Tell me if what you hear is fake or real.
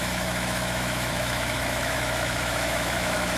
fake